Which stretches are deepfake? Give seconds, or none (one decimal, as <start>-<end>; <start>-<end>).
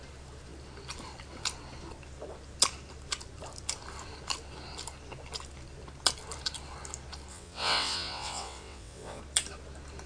7.3-9.2